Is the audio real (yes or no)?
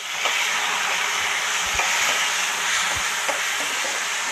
yes